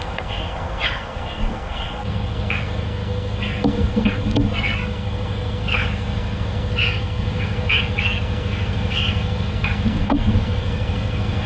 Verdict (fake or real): fake